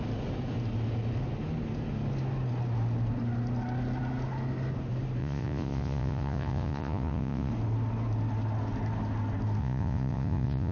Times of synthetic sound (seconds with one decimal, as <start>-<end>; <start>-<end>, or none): 5.2-7.5; 9.6-10.7